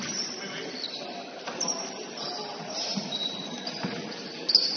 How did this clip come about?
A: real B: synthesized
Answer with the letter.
A